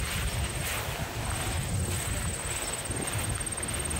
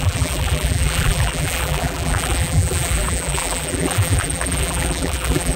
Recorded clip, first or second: first